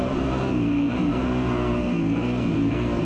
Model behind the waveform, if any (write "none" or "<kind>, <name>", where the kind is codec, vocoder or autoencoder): codec, SNAC